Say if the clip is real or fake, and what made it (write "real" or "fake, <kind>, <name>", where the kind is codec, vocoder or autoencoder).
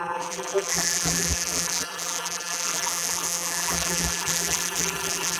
fake, vocoder, BigVGAN v2